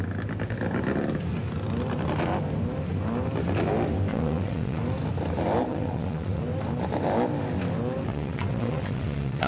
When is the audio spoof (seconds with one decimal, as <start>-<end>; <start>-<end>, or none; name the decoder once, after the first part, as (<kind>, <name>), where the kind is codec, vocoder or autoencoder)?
4.1-4.8 (vocoder, WaveNeXt); 5.7-6.4; 8.1-9.5